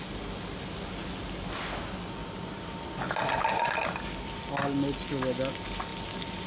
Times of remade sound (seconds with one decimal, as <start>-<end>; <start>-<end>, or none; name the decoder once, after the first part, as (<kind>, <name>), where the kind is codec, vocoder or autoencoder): none